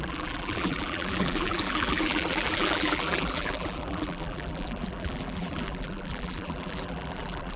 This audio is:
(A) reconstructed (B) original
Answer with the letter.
A